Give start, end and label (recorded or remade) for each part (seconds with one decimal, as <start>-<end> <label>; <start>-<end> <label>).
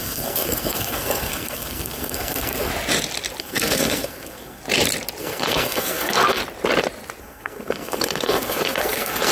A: 0.0-2.7 remade; 2.7-3.4 recorded; 3.4-4.6 remade; 4.6-5.2 recorded; 5.2-6.4 remade; 6.4-7.2 recorded; 7.2-9.3 remade